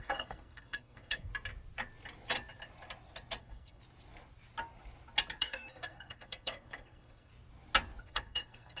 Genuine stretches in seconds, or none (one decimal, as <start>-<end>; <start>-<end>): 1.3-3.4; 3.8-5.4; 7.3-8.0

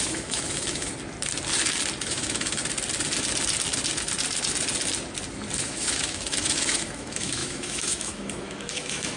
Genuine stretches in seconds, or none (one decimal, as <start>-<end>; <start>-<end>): 0.9-2.1; 2.6-5.6

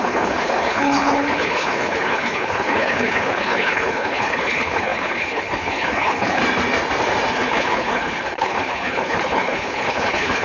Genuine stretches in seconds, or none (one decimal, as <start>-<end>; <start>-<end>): 6.4-7.3

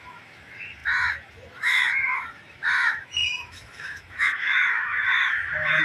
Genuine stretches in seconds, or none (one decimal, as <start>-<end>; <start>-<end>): none

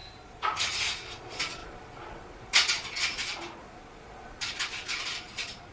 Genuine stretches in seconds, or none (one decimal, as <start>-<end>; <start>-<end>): none